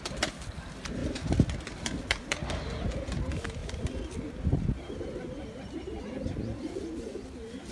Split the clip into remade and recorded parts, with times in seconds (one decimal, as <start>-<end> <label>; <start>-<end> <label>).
0.0-7.7 recorded